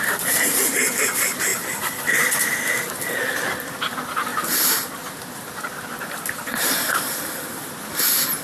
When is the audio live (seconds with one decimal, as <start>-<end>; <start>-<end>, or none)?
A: 0.0-1.5; 2.3-8.4